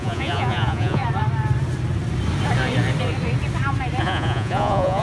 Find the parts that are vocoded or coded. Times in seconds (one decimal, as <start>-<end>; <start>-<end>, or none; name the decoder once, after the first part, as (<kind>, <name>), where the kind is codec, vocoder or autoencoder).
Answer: 0.0-1.0 (vocoder, Vocos); 4.0-5.0